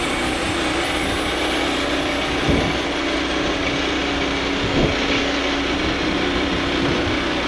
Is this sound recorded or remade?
recorded